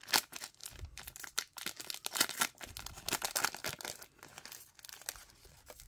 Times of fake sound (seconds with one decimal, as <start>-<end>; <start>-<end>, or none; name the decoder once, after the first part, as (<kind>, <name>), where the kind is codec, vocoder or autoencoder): none